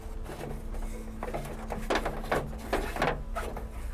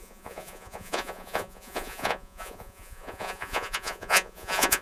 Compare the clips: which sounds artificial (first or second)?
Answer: second